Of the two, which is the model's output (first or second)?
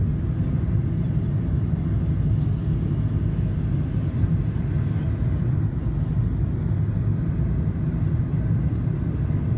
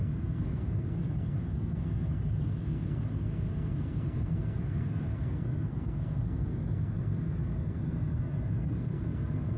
second